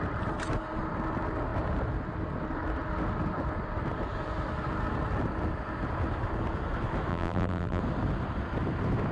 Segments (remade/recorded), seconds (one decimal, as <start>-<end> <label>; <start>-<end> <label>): 0.0-7.1 recorded; 7.1-7.8 remade; 7.8-9.1 recorded